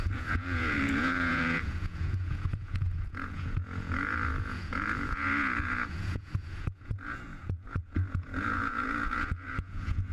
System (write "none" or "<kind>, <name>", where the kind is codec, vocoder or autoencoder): vocoder, Vocos